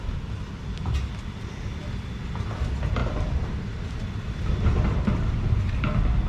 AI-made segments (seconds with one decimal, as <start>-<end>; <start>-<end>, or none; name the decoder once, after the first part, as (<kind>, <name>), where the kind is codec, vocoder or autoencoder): none